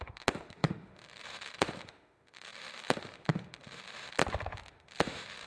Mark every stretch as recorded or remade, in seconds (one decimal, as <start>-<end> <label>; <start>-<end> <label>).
0.0-4.2 remade; 4.2-4.7 recorded; 4.7-5.5 remade